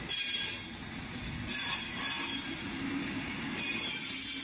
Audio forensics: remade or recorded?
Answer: recorded